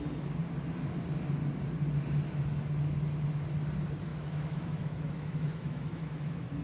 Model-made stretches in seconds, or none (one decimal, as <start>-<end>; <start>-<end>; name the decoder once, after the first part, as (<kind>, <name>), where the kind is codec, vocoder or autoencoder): 4.1-6.6 (autoencoder, DAC-VAE)

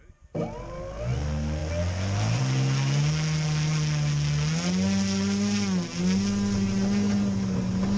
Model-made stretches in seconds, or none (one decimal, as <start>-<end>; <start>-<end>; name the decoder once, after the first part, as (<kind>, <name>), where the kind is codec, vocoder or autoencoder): none

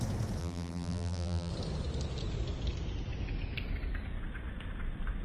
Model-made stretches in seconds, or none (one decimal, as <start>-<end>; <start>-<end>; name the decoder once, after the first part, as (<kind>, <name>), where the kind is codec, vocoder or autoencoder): 0.4-1.5 (vocoder, BigVGAN v2)

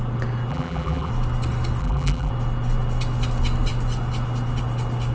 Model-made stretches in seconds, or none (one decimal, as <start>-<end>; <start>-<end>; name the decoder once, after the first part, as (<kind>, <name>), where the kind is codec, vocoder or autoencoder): 0.5-1.1 (vocoder, BigVGAN v2); 1.8-2.3